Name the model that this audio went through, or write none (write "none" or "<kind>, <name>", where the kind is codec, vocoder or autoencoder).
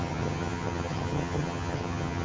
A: vocoder, HiFi-GAN